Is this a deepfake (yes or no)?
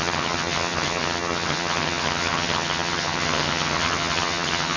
yes